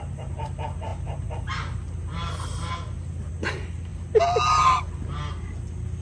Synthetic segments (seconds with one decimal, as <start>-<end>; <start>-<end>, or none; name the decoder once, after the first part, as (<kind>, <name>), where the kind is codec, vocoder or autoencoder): none